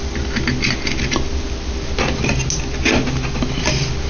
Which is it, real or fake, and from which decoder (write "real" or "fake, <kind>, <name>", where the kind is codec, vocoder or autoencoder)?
real